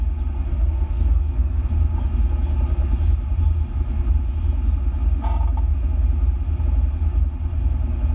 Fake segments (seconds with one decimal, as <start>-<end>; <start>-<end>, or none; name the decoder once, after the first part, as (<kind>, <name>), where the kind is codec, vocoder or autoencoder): 0.5-1.6 (codec, SNAC)